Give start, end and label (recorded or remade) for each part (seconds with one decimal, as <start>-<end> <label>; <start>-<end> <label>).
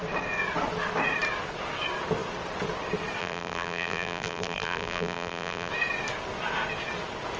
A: 0.0-3.2 recorded; 3.2-5.7 remade; 5.7-7.4 recorded